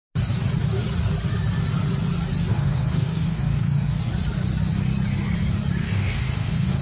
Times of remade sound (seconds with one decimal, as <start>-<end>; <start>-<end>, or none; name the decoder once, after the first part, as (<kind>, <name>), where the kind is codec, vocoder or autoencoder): 2.5-4.0 (codec, DAC); 5.8-6.8